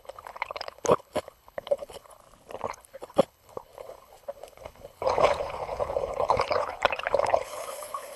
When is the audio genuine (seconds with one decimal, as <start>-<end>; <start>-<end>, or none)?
2.2-2.7